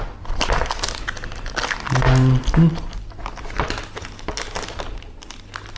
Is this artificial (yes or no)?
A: no